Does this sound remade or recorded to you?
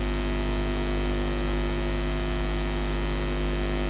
recorded